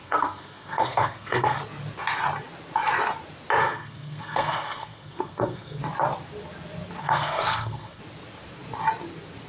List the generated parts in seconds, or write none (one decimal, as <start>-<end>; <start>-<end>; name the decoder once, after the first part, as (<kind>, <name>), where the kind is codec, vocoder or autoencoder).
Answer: 0.0-1.6 (codec, SNAC); 3.6-5.8; 7.0-8.0

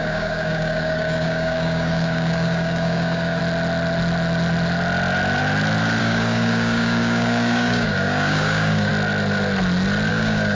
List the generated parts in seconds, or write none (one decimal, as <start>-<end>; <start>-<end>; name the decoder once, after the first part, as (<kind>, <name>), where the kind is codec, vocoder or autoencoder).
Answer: 0.0-3.4 (codec, DAC); 6.0-8.9; 10.1-10.5

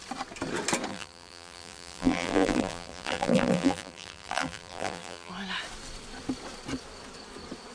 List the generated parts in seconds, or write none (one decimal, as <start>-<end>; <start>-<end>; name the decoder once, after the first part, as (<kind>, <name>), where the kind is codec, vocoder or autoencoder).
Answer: 0.9-5.3 (vocoder, BigVGAN v2)

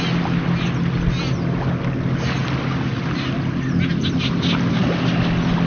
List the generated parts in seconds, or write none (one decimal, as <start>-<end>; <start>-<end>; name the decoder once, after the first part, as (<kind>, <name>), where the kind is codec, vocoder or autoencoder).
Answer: none

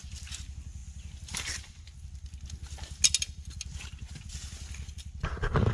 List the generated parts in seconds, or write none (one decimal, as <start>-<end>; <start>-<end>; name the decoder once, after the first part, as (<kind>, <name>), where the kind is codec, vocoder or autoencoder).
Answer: none

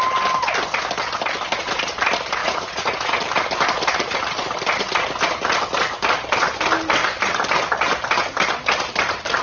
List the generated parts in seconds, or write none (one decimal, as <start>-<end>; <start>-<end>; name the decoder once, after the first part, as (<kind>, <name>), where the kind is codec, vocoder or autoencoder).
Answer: 2.4-3.2 (vocoder, Vocos)

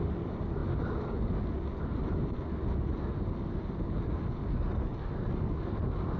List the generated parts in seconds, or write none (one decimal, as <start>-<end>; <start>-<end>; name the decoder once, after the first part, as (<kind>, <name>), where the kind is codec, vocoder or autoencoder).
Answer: none